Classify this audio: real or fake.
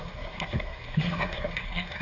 fake